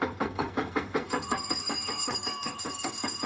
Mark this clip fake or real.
fake